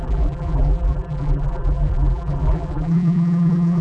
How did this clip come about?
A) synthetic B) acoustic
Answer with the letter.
A